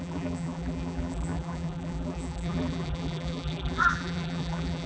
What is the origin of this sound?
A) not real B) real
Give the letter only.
A